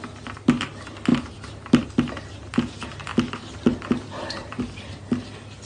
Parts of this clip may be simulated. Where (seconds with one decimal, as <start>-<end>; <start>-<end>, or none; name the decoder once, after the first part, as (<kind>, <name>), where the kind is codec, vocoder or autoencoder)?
1.1-1.8 (vocoder, BigVGAN v2); 3.1-4.6